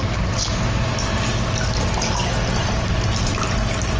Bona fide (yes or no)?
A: yes